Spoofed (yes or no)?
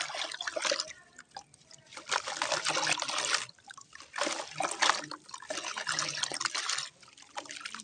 no